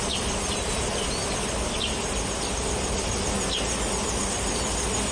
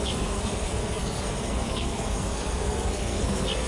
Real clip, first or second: first